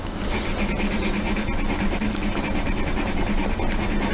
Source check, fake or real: real